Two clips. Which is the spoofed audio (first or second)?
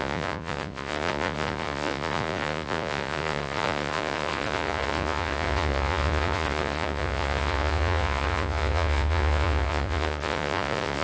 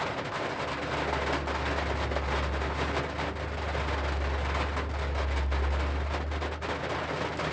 first